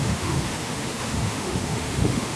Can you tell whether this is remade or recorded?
remade